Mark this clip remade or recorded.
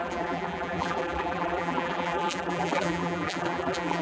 remade